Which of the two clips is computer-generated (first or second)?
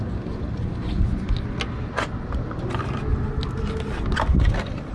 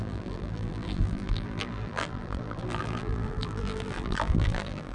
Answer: second